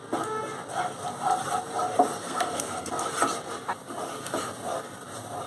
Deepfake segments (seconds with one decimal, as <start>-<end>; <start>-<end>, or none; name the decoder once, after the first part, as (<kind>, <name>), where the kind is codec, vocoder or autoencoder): 2.2-2.9 (codec, SNAC)